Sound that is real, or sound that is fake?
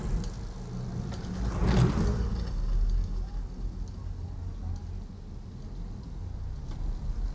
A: real